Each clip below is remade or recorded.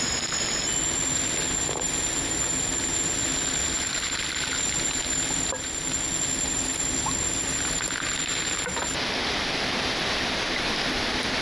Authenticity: recorded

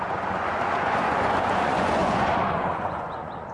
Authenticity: remade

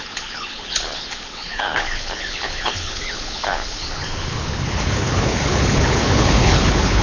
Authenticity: remade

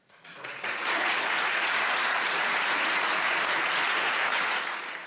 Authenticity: remade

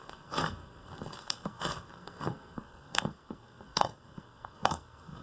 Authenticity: remade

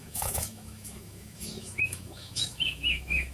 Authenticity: remade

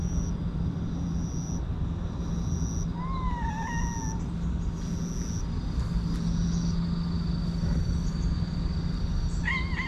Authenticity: recorded